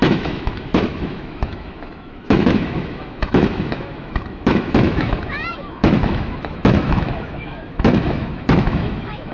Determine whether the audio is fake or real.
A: fake